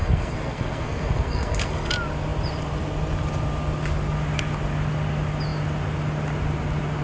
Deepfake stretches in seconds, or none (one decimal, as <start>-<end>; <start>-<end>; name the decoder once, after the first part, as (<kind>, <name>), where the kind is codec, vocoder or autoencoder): 0.0-1.9 (codec, SNAC)